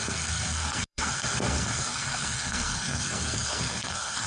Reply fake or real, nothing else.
fake